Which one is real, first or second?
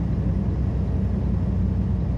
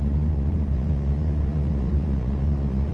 first